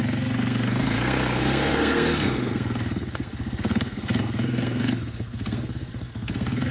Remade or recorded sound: remade